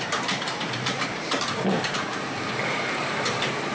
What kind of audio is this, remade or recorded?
remade